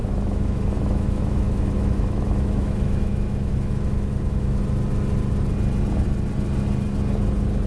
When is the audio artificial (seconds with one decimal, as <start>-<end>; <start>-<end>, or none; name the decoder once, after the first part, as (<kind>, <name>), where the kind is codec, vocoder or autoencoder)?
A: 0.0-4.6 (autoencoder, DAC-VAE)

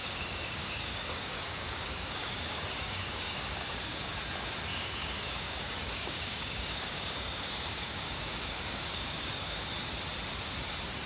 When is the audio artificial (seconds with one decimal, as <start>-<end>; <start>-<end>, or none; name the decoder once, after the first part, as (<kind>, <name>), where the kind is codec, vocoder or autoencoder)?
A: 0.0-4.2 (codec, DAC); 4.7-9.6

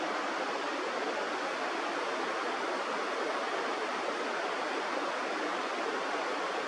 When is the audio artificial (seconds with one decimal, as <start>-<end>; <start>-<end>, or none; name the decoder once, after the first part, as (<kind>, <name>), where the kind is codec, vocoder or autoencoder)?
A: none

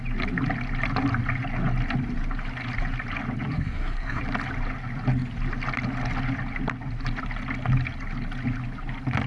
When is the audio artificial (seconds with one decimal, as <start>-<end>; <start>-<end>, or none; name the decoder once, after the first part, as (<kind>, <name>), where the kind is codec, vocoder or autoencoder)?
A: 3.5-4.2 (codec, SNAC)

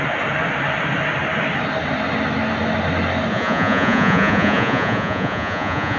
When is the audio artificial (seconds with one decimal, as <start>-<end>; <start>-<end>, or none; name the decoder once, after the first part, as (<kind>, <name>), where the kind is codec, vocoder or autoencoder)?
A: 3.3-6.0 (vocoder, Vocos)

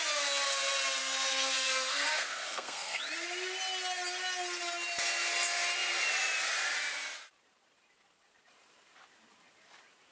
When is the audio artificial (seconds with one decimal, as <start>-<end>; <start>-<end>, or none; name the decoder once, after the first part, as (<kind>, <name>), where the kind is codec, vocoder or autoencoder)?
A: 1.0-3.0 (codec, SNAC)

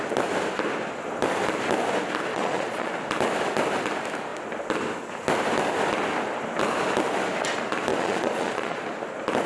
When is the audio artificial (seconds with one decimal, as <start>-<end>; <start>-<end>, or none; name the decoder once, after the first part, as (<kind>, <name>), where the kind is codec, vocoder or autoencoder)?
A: 2.3-2.9 (vocoder, Vocos); 7.9-8.8

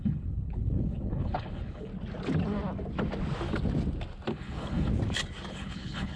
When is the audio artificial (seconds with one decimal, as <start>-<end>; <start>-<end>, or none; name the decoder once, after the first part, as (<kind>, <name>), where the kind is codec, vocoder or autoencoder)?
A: 0.0-1.9 (codec, HILCodec); 4.3-4.9; 5.5-6.2